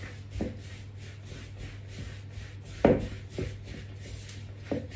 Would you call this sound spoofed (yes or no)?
no